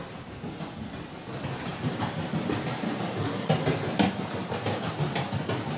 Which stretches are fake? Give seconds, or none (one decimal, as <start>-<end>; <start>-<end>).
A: 1.7-4.9